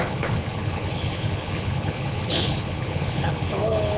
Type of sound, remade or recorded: remade